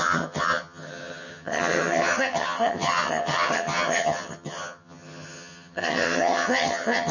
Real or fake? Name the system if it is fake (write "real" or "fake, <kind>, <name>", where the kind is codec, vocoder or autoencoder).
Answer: fake, vocoder, HiFi-GAN